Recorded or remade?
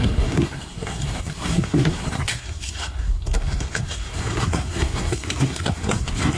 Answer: remade